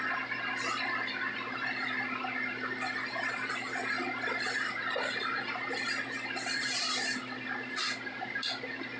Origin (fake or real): real